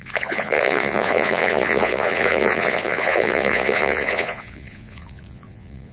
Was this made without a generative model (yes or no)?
no